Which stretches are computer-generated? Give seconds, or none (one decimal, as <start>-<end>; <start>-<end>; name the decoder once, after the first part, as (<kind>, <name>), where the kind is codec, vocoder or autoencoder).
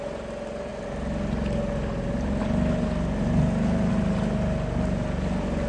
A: none